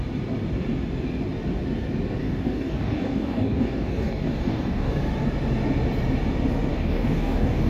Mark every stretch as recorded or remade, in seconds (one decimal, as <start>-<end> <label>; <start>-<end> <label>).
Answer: 0.0-2.2 recorded; 2.2-4.9 remade; 4.9-6.7 recorded; 6.7-7.7 remade